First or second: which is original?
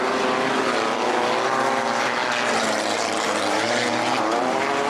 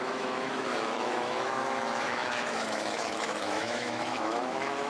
first